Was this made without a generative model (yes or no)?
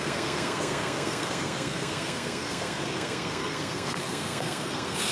no